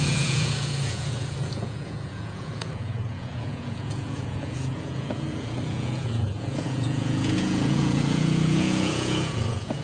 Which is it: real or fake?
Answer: fake